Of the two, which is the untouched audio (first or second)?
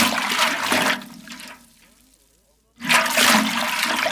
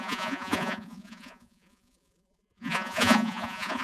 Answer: first